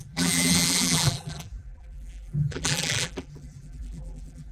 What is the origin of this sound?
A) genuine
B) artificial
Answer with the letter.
B